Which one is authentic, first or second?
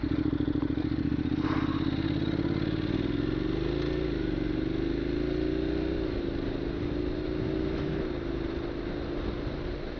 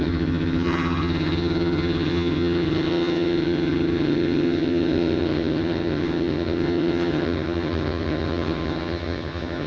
first